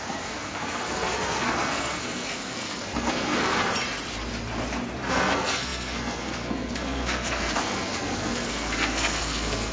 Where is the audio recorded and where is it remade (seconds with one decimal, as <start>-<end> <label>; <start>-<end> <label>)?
0.0-3.5 remade; 3.5-5.1 recorded; 5.1-9.7 remade